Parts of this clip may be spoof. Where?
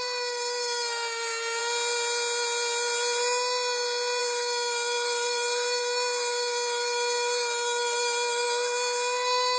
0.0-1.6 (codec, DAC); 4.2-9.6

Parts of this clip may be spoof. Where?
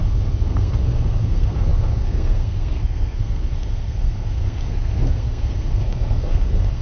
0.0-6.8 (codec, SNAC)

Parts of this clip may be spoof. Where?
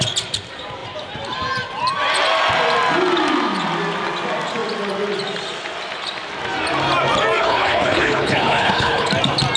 7.4-9.1 (codec, HILCodec)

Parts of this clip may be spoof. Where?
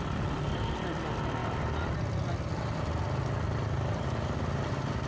none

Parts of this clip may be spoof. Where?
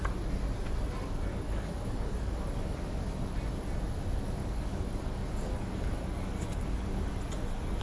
1.3-3.2 (codec, DAC); 4.4-7.1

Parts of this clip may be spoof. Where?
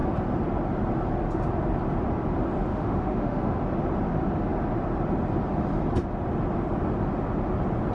2.7-3.6 (autoencoder, DAC-VAE)